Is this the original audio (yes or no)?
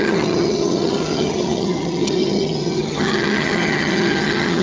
no